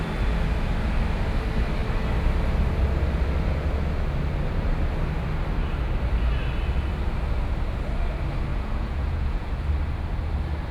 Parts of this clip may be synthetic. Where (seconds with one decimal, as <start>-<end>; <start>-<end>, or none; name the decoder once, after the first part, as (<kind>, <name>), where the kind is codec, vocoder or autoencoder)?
8.5-9.5 (vocoder, Vocos)